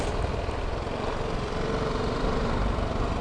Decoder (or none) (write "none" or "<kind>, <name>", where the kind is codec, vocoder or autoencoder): vocoder, BigVGAN v2